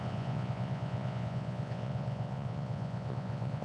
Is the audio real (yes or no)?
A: no